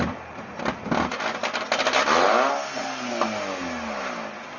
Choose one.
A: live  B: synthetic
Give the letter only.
A